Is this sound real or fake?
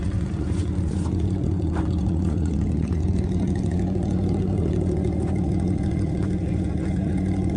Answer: fake